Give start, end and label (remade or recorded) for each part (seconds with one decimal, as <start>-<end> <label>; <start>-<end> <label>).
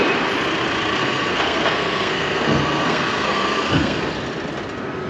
0.0-1.0 recorded; 1.0-4.1 remade; 4.1-5.1 recorded